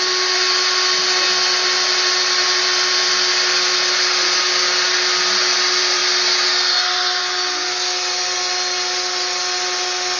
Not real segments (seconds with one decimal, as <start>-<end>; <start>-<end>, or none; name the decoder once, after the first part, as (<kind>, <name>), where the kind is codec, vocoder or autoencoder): none